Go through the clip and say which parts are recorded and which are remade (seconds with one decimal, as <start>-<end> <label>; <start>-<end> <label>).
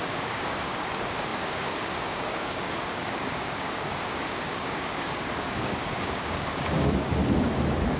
0.0-7.2 remade; 7.2-8.0 recorded